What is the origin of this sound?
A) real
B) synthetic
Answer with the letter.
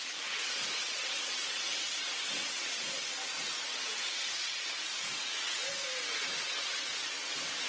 B